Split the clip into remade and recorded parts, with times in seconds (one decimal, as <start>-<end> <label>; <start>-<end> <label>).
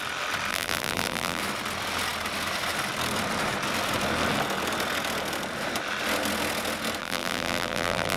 0.0-0.5 recorded; 0.5-1.4 remade; 1.4-7.0 recorded; 7.0-8.2 remade